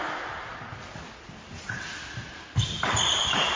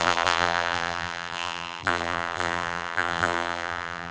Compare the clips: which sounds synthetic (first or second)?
second